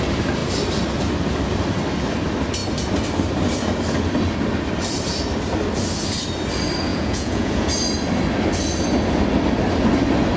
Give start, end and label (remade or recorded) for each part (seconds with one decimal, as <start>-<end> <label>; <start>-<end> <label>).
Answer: 0.0-6.9 recorded; 6.9-7.7 remade; 7.7-10.4 recorded